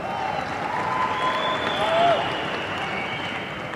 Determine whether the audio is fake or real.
real